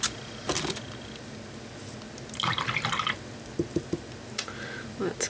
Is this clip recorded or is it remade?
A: recorded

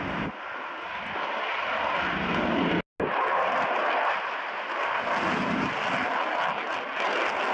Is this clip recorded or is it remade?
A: recorded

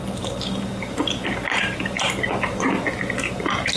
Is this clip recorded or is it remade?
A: recorded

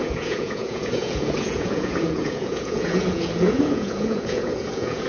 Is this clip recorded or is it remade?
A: remade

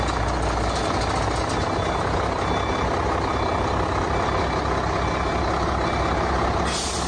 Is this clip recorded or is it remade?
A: recorded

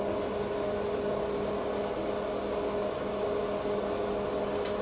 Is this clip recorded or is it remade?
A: recorded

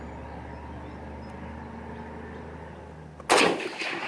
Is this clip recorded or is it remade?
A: recorded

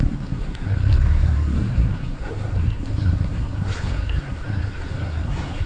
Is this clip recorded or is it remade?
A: remade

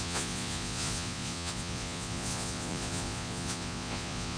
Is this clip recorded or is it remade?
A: remade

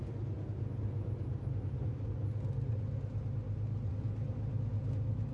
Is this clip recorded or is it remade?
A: recorded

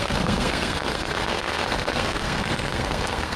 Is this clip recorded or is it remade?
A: remade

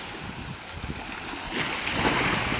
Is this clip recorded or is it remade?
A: recorded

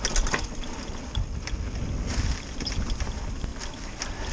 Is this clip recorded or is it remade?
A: recorded